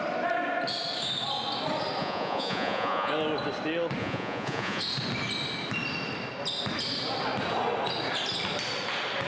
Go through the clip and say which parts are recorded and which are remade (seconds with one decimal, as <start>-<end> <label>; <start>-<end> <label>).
0.0-2.0 recorded; 2.0-3.1 remade; 3.1-4.0 recorded; 4.0-4.8 remade; 4.8-9.3 recorded